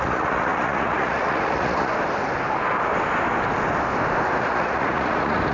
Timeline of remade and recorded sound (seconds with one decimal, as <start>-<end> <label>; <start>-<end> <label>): 0.0-1.9 remade; 1.9-4.4 recorded; 4.4-5.5 remade